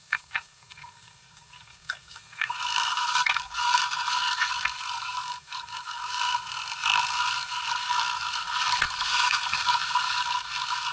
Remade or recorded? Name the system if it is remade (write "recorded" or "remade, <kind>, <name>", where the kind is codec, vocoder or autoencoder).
remade, codec, SNAC